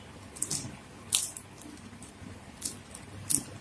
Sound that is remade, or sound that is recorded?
recorded